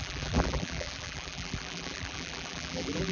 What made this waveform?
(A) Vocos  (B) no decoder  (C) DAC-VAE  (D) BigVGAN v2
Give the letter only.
D